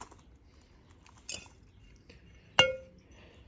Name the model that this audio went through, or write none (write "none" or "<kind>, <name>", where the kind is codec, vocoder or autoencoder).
none